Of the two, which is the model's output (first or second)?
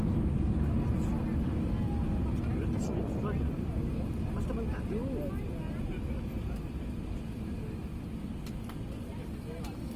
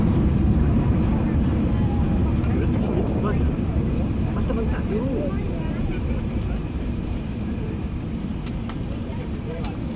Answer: second